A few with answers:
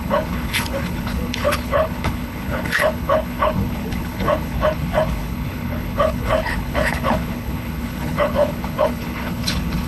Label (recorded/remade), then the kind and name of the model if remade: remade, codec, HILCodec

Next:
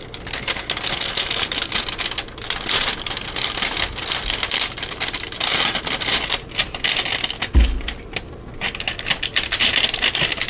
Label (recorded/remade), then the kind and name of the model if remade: recorded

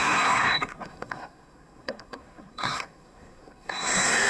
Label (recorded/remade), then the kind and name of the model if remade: remade, codec, SNAC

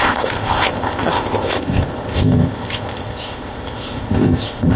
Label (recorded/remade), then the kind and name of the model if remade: remade, codec, ZipCodec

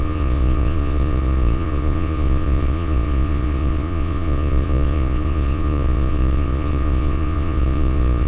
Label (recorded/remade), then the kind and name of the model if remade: remade, vocoder, Vocos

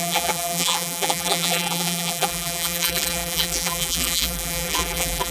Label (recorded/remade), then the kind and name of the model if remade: remade, vocoder, BigVGAN v2